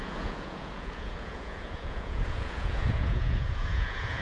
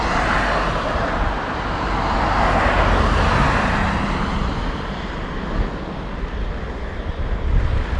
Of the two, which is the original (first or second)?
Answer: second